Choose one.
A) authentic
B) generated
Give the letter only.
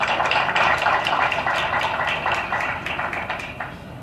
B